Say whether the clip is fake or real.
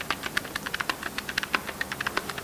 real